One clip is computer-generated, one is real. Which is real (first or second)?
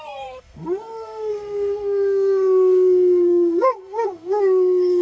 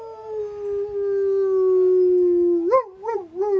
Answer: second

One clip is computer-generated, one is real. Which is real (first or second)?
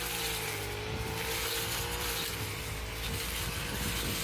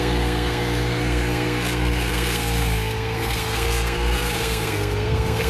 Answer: first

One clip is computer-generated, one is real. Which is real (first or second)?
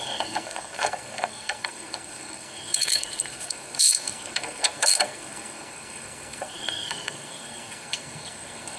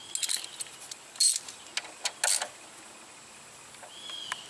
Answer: second